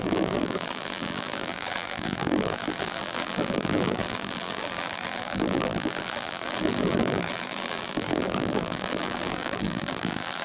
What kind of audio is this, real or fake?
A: fake